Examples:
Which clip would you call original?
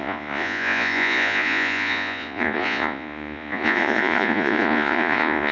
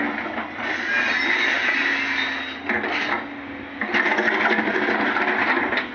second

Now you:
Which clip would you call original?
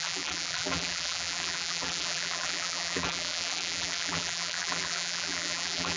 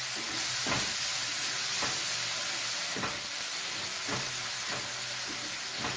second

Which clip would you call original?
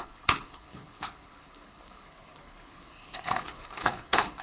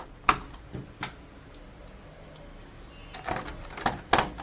second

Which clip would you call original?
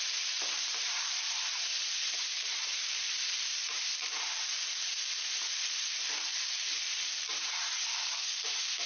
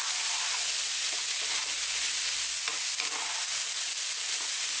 second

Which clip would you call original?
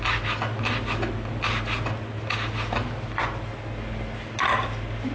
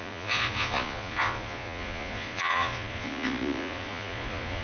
first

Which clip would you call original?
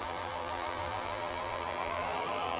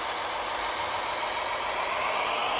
second